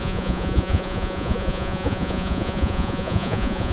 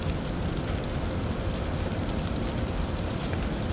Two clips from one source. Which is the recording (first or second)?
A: second